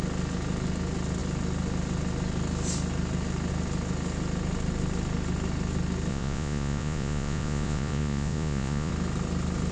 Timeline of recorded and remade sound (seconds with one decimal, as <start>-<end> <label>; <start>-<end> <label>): 0.0-6.1 recorded; 6.1-8.9 remade; 8.9-9.7 recorded